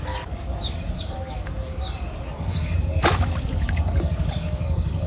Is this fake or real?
fake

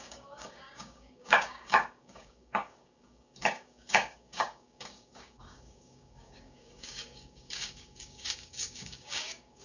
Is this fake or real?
fake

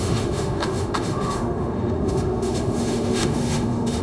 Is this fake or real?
fake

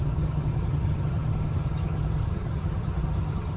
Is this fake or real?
fake